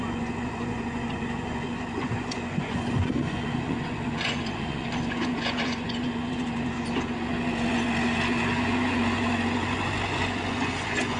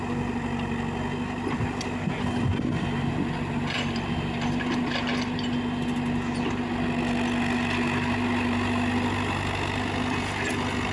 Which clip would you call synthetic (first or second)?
first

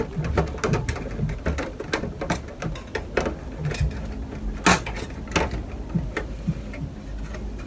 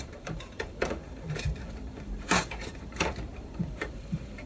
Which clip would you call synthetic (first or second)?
second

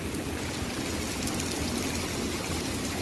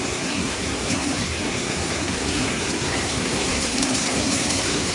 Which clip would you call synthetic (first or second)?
second